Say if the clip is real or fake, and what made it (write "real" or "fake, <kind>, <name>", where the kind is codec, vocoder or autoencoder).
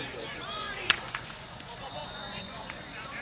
fake, vocoder, Vocos